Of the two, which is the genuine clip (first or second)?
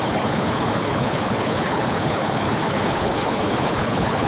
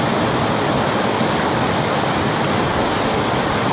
second